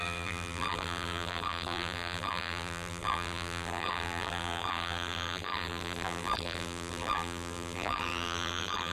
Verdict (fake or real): fake